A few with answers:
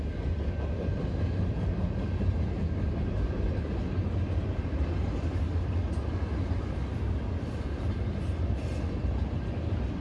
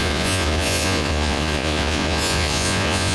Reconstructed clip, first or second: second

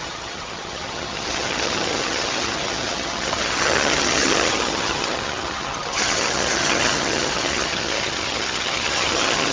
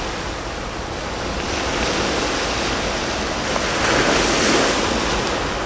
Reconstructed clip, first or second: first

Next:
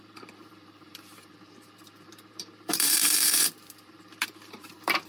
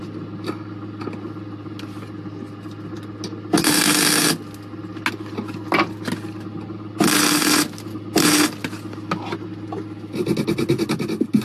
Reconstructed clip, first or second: first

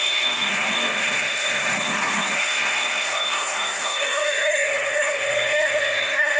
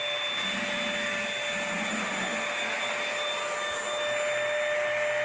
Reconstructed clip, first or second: first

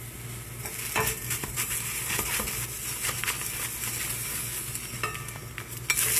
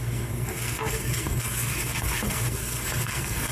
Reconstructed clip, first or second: second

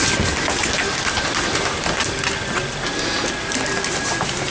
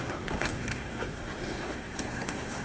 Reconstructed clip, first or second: second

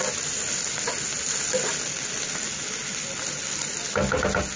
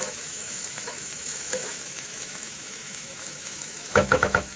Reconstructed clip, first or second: second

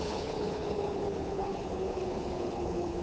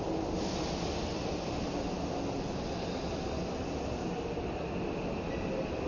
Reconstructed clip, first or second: first